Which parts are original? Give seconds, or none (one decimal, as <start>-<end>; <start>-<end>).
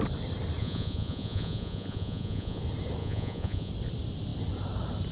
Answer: 0.0-0.6; 2.6-3.0; 3.7-5.1